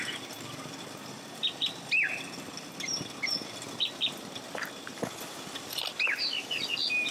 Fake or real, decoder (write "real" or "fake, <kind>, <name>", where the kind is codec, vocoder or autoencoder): real